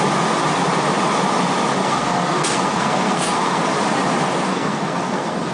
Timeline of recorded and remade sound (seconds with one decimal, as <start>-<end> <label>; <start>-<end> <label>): 0.0-1.8 recorded; 1.8-3.6 remade; 3.6-4.5 recorded; 4.5-5.5 remade